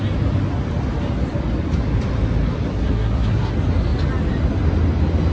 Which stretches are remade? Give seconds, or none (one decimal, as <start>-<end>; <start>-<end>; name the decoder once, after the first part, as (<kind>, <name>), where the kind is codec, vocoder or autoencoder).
2.7-3.5 (codec, SNAC)